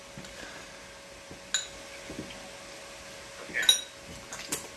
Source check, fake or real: real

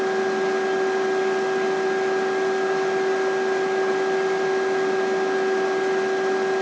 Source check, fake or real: real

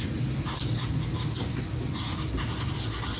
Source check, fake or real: real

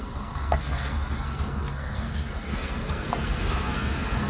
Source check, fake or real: fake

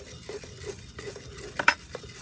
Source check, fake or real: real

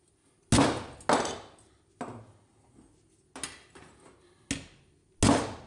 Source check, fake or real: real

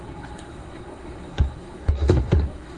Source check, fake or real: fake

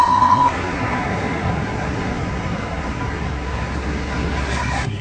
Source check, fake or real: fake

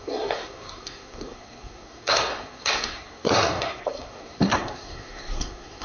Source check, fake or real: fake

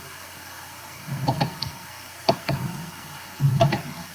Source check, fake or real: fake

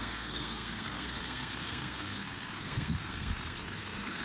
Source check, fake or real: fake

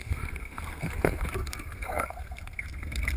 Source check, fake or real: fake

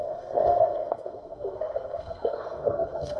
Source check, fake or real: fake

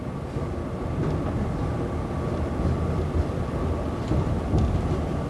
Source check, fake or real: real